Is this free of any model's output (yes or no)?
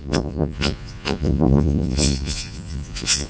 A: no